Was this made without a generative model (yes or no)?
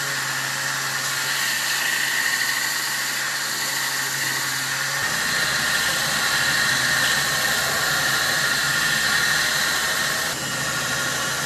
yes